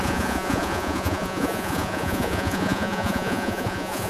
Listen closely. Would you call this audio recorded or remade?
remade